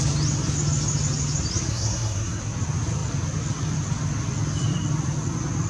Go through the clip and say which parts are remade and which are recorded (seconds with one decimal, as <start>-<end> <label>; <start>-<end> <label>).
0.0-1.7 recorded; 1.7-2.4 remade; 2.4-5.7 recorded